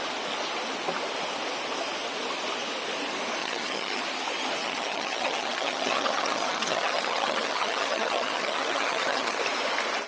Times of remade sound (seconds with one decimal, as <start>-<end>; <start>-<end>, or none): 3.4-4.0; 4.6-9.4